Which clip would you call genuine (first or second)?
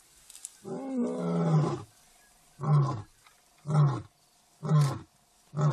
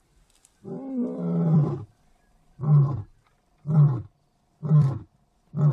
first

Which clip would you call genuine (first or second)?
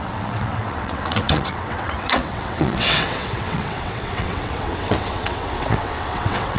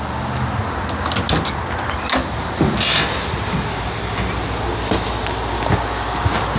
second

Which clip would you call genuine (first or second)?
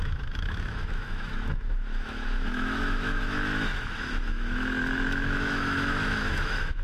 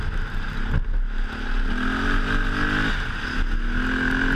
second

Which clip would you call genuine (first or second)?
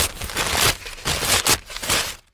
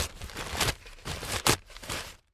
first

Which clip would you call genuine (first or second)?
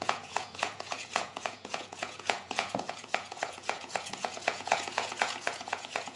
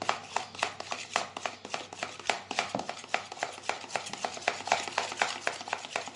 second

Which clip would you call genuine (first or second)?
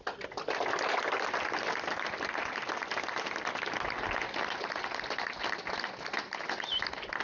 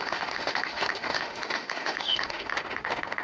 first